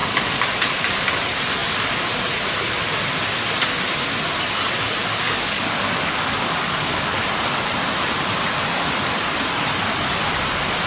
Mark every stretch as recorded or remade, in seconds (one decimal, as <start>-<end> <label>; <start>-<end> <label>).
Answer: 0.0-0.5 remade; 0.5-5.0 recorded; 5.0-7.2 remade; 7.2-10.9 recorded